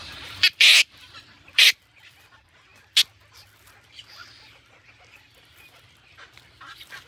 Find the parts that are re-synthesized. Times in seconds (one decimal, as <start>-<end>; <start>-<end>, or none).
0.0-2.7; 5.6-7.1